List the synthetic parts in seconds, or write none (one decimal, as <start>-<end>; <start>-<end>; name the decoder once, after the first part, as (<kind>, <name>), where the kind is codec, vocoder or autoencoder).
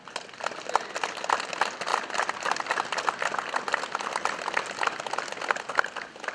none